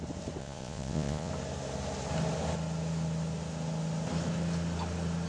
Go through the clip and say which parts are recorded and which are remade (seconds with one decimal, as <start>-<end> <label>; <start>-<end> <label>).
0.0-0.4 recorded; 0.4-1.3 remade; 1.3-5.3 recorded